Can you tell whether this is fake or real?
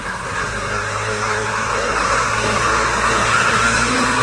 fake